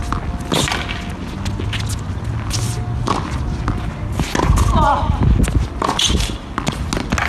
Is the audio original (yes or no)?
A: yes